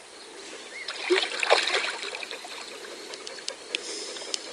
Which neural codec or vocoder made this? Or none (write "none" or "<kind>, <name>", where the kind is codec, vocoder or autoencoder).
none